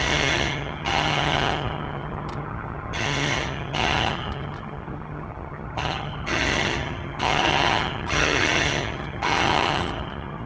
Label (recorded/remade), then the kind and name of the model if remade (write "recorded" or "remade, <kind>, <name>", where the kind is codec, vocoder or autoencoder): remade, vocoder, HiFi-GAN